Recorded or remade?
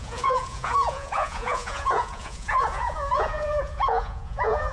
remade